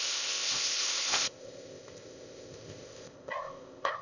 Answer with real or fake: fake